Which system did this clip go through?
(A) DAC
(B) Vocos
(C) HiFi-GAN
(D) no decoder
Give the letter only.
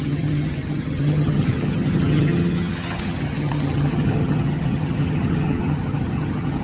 C